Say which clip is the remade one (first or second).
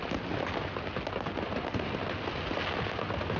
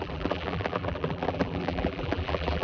second